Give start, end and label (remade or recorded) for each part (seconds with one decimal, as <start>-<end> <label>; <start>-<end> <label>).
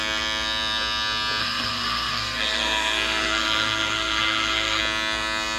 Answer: 0.0-1.4 recorded; 1.4-4.8 remade; 4.8-5.6 recorded